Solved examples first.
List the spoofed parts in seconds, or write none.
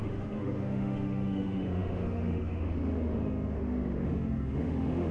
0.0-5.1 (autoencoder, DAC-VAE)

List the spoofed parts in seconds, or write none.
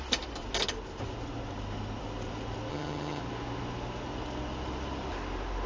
2.7-3.2 (vocoder, HiFi-GAN)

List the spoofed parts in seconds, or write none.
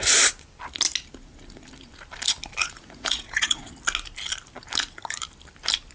2.6-3.7 (vocoder, Vocos)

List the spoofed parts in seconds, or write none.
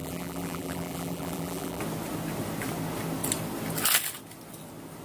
0.0-1.8 (vocoder, BigVGAN v2)